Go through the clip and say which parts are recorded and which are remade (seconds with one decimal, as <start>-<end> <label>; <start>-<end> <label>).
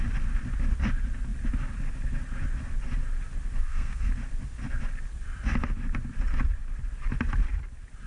0.0-3.6 recorded; 3.6-4.1 remade; 4.1-8.1 recorded